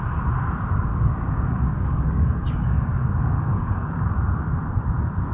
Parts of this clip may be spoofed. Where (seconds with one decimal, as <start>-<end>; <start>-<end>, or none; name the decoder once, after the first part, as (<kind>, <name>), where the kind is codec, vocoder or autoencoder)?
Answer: 0.9-4.1 (codec, DAC)

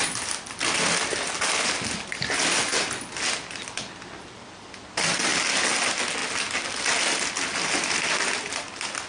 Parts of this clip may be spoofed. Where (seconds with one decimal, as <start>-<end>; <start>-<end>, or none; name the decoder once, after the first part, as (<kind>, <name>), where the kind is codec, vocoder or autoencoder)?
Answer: none

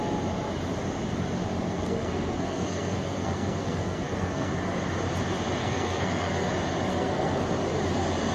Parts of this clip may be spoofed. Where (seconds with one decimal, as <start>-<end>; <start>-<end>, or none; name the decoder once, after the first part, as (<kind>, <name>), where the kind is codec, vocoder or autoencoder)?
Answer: 1.7-4.5 (codec, SNAC); 5.6-6.5; 6.9-7.4

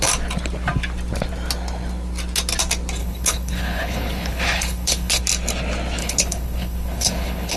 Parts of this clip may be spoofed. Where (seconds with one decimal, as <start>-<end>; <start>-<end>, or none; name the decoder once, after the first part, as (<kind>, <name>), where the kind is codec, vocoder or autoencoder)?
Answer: 3.0-5.2 (codec, HILCodec); 6.0-7.6

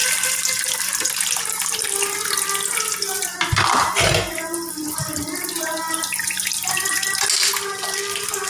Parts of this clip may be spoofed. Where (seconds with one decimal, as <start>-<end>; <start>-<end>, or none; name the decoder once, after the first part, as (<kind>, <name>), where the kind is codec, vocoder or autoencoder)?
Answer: none

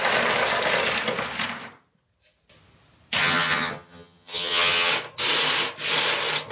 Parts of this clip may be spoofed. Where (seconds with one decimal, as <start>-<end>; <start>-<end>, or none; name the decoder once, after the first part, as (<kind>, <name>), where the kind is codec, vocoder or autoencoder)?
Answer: 3.2-4.9 (vocoder, HiFi-GAN)

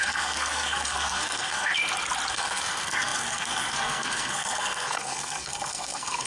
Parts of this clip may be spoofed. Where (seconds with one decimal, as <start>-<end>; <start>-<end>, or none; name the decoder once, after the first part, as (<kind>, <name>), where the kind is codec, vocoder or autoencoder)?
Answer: 0.0-1.7 (codec, SNAC); 2.3-6.3